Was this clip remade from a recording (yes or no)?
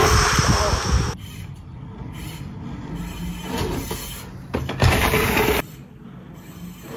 no